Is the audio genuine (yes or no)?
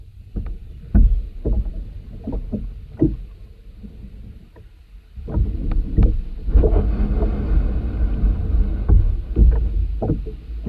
yes